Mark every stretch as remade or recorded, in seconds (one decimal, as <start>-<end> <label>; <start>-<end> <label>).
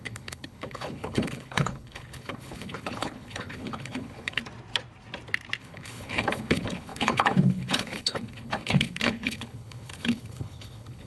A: 0.0-4.4 remade; 4.4-5.6 recorded; 5.6-11.1 remade